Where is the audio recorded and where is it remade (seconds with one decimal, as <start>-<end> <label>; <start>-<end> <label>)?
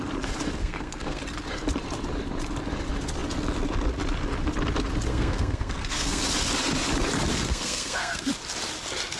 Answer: 0.0-0.6 recorded; 0.6-1.2 remade; 1.2-5.1 recorded; 5.1-6.2 remade; 6.2-7.3 recorded; 7.3-8.3 remade; 8.3-9.2 recorded